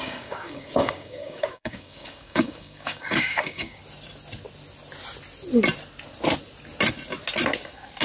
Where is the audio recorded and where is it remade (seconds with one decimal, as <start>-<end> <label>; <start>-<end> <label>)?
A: 0.0-3.8 remade; 3.8-8.0 recorded